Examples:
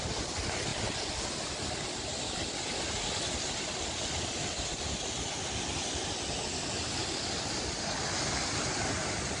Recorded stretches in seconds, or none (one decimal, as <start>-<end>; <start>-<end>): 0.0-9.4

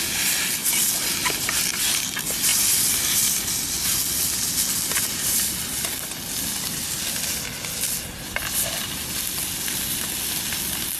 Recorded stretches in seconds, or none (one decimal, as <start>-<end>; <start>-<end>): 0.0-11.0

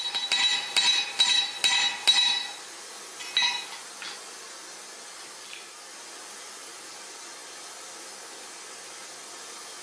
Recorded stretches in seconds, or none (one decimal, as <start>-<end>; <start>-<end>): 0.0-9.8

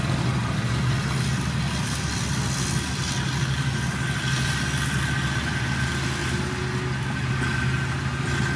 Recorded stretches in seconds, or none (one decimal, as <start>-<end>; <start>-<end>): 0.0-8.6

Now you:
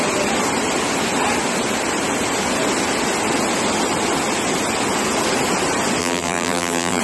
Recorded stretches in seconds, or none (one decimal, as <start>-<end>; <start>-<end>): 0.0-6.0